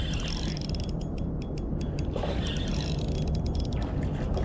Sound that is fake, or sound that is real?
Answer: real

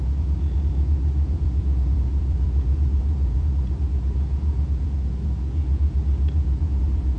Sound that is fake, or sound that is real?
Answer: fake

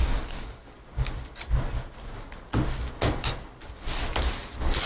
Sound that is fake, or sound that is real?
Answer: real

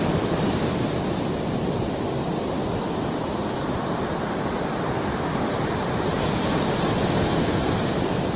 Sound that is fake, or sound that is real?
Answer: real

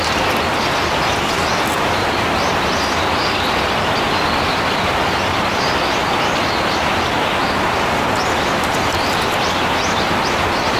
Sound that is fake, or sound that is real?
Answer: real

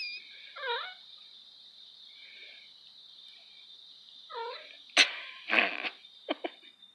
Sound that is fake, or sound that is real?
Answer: real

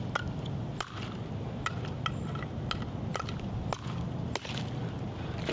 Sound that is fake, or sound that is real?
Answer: real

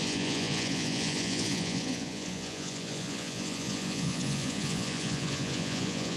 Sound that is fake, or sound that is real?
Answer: fake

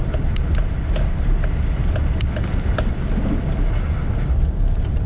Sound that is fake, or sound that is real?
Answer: real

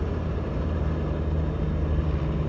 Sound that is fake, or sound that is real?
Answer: real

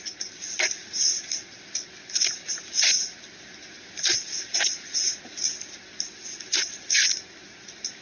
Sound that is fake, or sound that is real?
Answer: fake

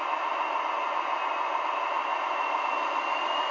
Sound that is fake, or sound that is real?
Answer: real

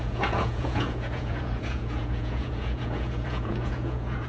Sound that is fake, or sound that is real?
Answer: fake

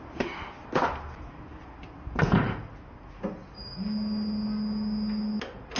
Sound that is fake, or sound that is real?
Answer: real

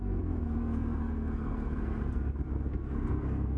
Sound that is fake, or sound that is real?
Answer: fake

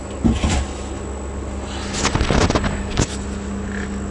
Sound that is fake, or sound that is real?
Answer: real